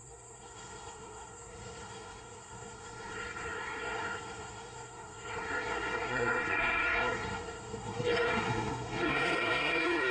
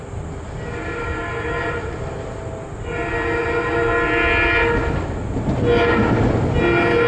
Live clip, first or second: second